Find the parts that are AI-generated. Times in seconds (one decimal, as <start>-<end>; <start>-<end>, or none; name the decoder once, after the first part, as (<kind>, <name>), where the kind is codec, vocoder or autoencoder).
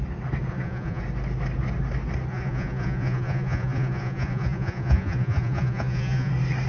0.5-1.0 (vocoder, Vocos); 2.3-6.3